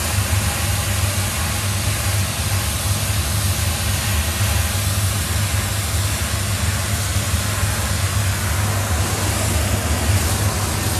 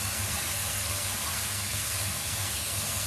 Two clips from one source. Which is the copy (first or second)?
second